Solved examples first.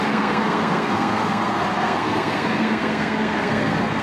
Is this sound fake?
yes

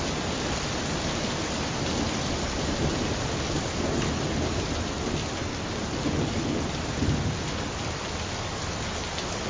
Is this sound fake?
no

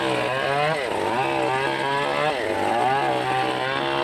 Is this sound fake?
no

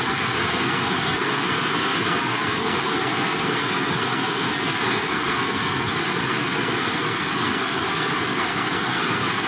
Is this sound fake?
yes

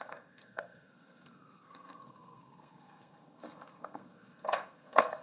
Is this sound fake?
yes